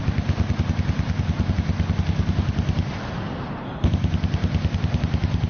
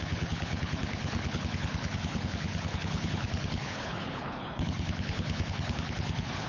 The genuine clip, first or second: first